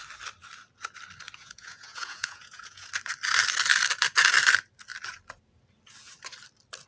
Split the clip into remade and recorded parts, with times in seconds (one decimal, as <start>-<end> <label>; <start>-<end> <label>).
0.0-1.4 recorded; 1.4-2.9 remade; 2.9-6.9 recorded

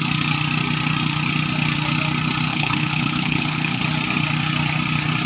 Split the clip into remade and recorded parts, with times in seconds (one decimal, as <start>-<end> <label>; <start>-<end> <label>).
0.0-2.5 recorded; 2.5-3.8 remade; 3.8-5.3 recorded

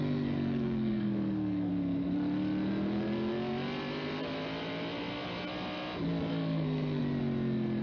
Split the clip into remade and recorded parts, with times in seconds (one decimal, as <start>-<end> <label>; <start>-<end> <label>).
0.0-1.7 remade; 1.7-6.3 recorded; 6.3-7.0 remade; 7.0-7.8 recorded

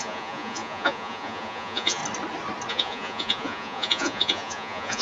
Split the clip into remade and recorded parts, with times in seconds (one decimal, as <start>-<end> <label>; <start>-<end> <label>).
0.0-2.0 remade; 2.0-2.7 recorded; 2.7-5.0 remade

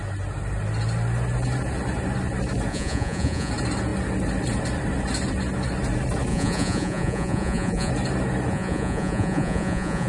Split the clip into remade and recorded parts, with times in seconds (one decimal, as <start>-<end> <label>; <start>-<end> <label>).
0.0-2.7 recorded; 2.7-3.5 remade; 3.5-6.3 recorded; 6.3-7.9 remade; 7.9-8.5 recorded; 8.5-10.1 remade

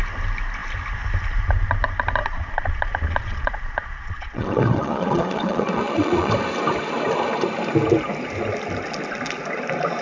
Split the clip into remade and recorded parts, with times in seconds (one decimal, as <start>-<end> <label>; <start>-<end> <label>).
0.0-2.2 recorded; 2.2-6.3 remade; 6.3-10.0 recorded